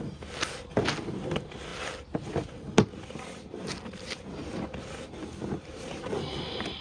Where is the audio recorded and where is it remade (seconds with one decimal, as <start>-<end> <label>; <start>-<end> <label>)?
0.0-5.2 recorded; 5.2-6.0 remade; 6.0-6.8 recorded